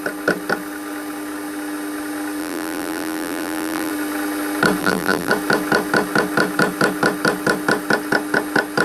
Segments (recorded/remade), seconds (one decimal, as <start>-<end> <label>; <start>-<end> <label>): 0.0-2.4 recorded; 2.4-3.9 remade; 3.9-4.8 recorded; 4.8-5.3 remade; 5.3-8.8 recorded